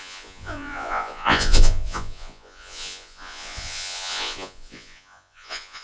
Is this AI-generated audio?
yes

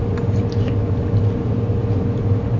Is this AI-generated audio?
no